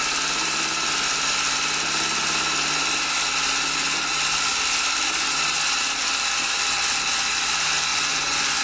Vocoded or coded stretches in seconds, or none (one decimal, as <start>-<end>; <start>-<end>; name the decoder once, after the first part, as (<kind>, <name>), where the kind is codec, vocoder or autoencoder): 7.9-8.6 (vocoder, Vocos)